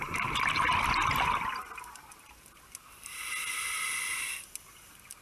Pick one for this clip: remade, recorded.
recorded